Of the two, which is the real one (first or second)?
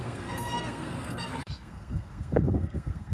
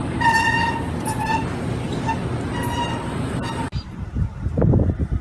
second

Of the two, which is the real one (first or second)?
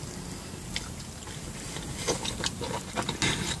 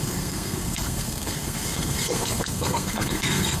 first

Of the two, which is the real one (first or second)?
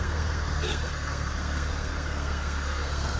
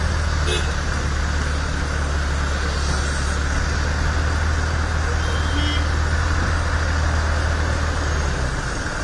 second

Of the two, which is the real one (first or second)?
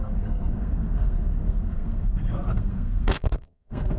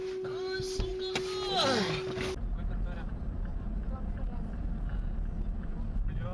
second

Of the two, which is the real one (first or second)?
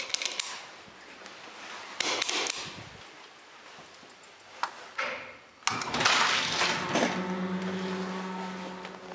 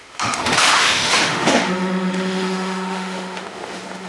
first